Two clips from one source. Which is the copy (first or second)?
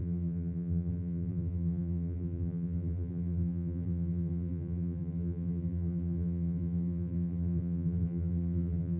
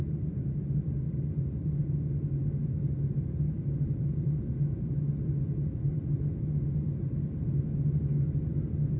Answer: first